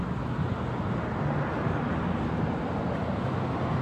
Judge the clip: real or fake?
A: real